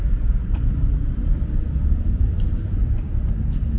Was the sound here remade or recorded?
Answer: remade